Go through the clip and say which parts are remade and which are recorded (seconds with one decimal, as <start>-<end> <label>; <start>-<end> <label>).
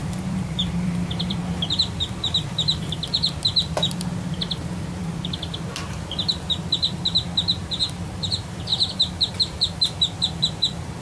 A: 0.0-3.5 remade; 3.5-4.8 recorded; 4.8-11.0 remade